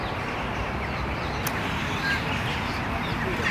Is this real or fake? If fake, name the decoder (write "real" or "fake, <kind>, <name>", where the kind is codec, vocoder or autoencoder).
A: real